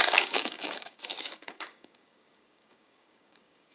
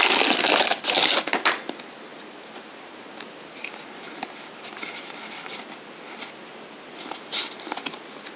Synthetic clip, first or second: first